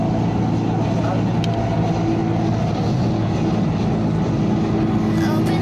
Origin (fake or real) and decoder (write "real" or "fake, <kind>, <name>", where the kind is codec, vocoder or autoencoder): real